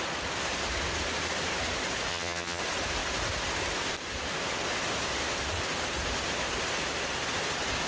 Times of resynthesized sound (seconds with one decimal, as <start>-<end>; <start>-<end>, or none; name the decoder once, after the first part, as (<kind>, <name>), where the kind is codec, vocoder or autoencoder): 2.1-2.6 (vocoder, HiFi-GAN)